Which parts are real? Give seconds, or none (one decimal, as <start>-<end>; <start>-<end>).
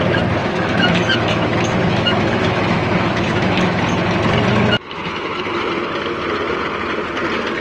0.0-0.4; 3.8-4.5; 5.4-7.6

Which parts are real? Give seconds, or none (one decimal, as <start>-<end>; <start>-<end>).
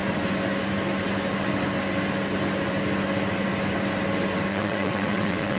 0.0-4.5